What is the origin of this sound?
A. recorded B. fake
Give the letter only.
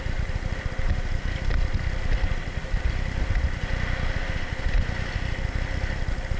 A